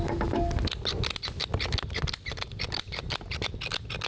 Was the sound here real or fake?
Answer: real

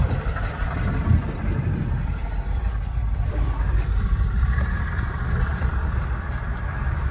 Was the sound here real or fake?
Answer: fake